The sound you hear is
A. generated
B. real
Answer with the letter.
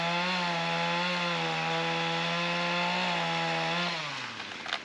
B